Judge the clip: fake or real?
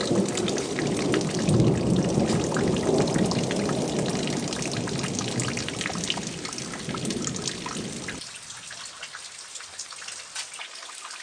real